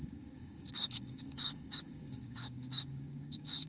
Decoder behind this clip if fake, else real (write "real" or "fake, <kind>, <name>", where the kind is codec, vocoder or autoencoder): fake, codec, DAC